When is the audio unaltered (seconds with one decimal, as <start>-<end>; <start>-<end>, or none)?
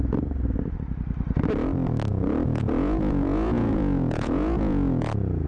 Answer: 0.0-2.1